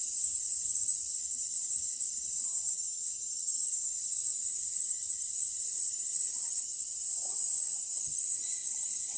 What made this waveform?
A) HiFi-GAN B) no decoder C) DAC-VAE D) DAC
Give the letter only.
A